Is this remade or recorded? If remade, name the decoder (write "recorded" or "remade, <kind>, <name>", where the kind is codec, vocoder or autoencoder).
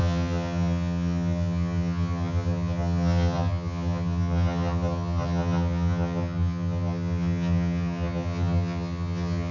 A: remade, vocoder, HiFi-GAN